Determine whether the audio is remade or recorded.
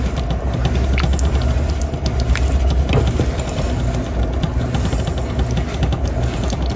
recorded